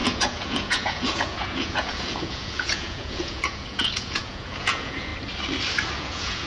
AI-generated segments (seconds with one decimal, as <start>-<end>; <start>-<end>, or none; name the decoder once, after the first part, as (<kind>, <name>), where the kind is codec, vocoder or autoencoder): 0.0-5.1 (vocoder, Vocos); 6.0-6.5